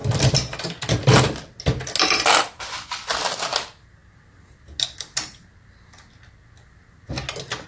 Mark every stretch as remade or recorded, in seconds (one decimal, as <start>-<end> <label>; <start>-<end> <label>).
0.0-7.7 recorded